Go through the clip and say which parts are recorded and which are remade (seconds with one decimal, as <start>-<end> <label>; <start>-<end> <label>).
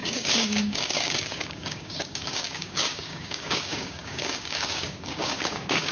0.0-5.9 remade